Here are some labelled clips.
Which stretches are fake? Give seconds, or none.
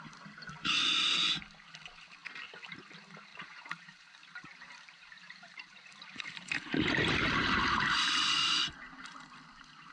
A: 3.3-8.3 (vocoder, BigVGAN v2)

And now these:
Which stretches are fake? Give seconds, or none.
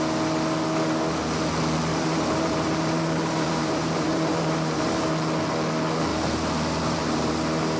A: 1.9-5.1 (vocoder, BigVGAN v2); 6.1-7.3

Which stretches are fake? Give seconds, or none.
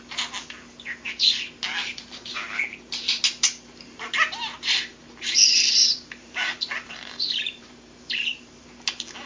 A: 1.8-2.6 (vocoder, BigVGAN v2); 5.9-8.6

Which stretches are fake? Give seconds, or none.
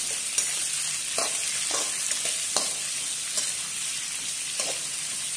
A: none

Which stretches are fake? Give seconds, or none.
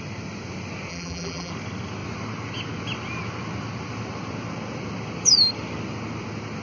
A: 0.9-1.5 (vocoder, BigVGAN v2)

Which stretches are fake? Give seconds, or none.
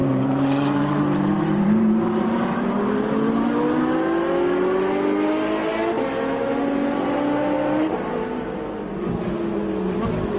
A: 0.0-3.8 (vocoder, BigVGAN v2)